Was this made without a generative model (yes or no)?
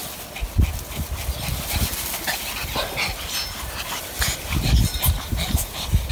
yes